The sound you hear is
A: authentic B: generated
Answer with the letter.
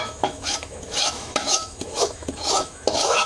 B